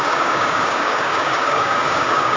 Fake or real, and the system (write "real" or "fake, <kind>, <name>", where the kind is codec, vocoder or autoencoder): fake, codec, DAC